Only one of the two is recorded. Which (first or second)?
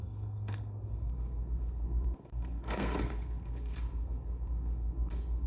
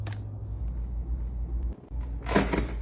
second